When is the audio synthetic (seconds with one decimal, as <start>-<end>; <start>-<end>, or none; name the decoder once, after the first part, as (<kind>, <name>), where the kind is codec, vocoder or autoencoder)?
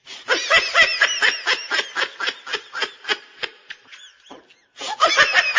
none